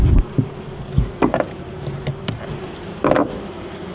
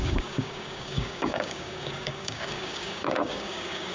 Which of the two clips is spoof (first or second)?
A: second